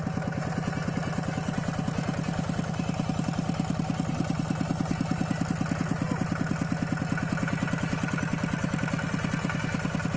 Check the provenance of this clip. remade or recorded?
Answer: recorded